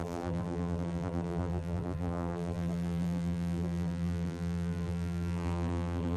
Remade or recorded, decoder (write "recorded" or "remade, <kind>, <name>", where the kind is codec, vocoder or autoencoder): remade, vocoder, BigVGAN v2